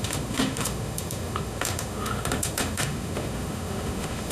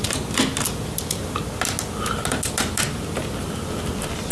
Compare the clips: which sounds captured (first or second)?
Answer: second